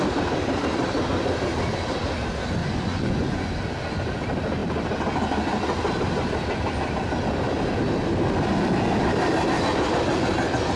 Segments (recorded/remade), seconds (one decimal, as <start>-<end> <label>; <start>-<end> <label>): 0.0-2.6 recorded; 2.6-3.6 remade; 3.6-10.8 recorded